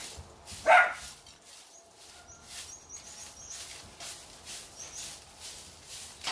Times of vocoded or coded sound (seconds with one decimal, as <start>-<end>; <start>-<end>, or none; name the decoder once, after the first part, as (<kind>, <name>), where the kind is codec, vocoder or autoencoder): none